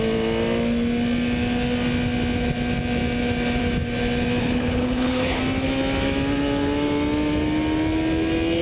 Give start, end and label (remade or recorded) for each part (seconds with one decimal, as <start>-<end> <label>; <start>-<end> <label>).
0.0-4.4 recorded; 4.4-5.4 remade; 5.4-8.6 recorded